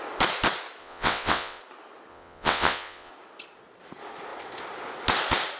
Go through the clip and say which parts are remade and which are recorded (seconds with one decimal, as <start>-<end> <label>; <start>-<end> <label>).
0.0-0.8 recorded; 0.8-1.6 remade; 1.6-2.1 recorded; 2.1-3.1 remade; 3.1-5.6 recorded